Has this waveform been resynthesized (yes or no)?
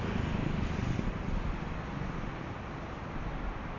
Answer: no